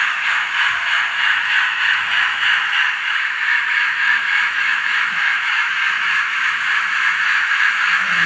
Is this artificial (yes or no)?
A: yes